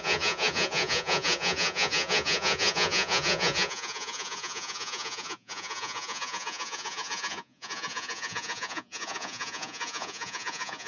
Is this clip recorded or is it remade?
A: remade